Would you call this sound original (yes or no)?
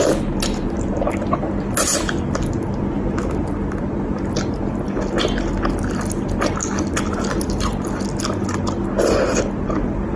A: yes